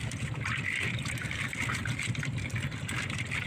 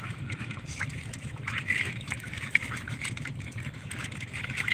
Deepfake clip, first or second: second